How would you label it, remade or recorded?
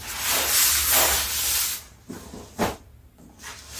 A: recorded